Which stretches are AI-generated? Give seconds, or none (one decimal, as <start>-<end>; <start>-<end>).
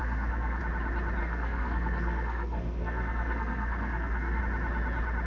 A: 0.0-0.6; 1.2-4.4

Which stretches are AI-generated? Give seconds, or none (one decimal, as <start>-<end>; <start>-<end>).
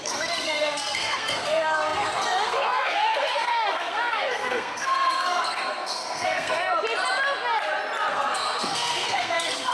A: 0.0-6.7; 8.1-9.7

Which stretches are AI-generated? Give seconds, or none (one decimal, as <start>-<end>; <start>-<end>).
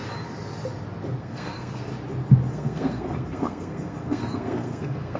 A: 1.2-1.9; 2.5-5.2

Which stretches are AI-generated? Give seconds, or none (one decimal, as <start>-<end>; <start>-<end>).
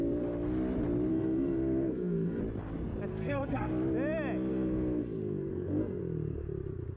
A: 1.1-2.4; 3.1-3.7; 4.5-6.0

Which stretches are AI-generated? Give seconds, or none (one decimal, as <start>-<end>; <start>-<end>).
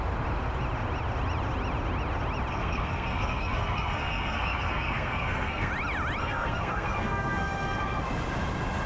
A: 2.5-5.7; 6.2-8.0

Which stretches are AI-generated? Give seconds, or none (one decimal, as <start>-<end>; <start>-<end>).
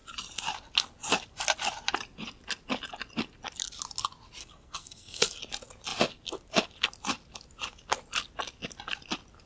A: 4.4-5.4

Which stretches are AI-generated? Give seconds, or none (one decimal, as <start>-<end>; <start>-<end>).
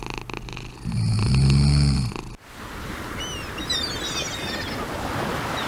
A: none